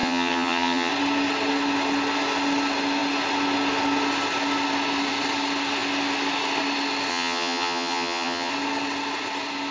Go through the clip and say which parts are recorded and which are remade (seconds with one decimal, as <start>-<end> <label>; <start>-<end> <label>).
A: 0.0-0.9 remade; 0.9-7.1 recorded; 7.1-8.5 remade; 8.5-9.7 recorded